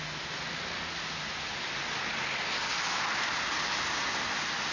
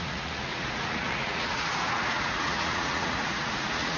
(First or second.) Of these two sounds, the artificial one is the second